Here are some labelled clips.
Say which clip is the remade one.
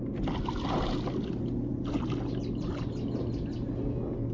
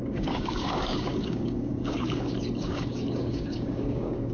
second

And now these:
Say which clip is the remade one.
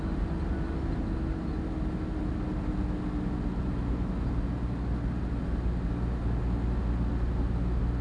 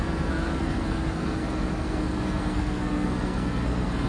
second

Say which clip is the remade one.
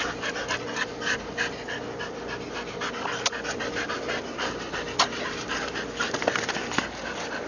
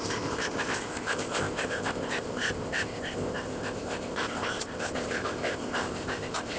second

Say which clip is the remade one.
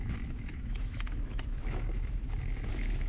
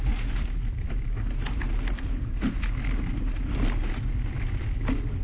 first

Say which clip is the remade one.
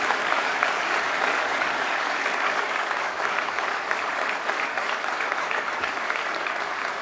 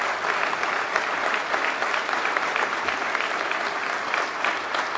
first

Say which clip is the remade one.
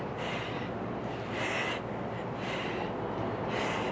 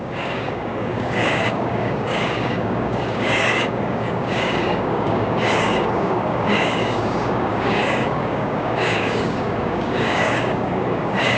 second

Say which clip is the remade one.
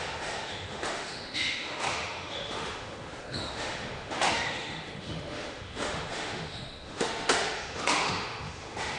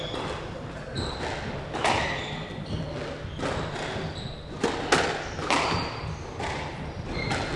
first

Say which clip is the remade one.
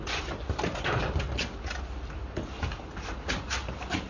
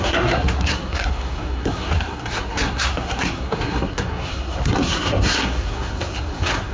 second